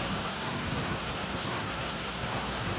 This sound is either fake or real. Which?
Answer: fake